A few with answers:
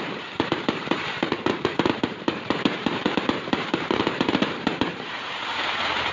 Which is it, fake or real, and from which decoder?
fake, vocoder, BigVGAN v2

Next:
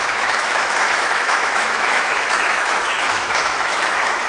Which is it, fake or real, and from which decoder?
fake, autoencoder, DAC-VAE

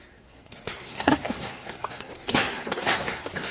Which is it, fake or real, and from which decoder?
fake, codec, SNAC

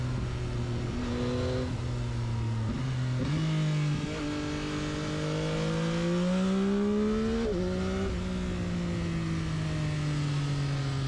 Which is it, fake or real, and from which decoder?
real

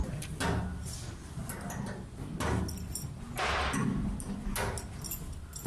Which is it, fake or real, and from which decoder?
real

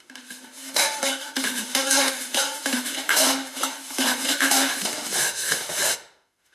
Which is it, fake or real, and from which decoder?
fake, autoencoder, DAC-VAE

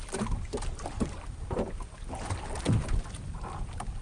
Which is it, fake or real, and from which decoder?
real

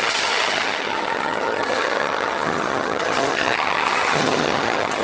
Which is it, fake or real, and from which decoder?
fake, vocoder, HiFi-GAN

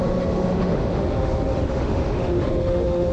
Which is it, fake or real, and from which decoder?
fake, autoencoder, DAC-VAE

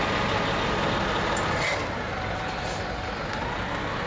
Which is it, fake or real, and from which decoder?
real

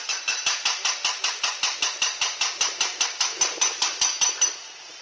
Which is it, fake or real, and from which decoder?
real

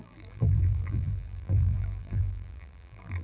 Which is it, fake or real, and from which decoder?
fake, vocoder, BigVGAN v2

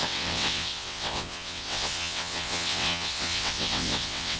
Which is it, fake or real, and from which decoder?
fake, vocoder, WaveNeXt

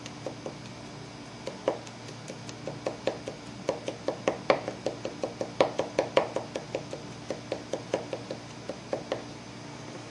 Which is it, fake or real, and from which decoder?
real